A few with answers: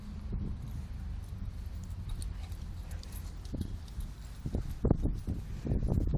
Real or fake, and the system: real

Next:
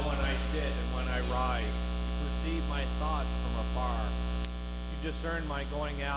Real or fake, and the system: real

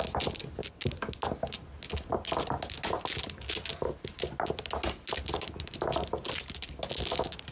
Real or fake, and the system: real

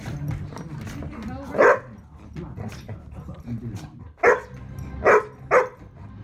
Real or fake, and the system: real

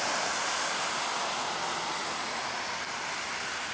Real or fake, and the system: real